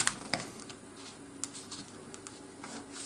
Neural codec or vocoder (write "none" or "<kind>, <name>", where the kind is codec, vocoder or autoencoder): none